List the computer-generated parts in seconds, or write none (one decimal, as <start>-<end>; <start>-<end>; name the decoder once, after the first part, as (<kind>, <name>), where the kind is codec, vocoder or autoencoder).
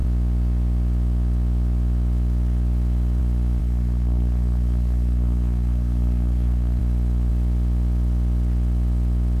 3.6-6.8 (codec, SNAC)